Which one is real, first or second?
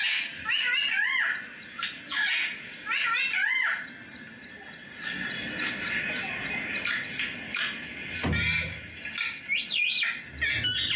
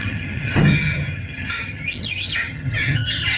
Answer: first